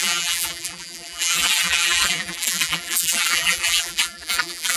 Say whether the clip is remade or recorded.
remade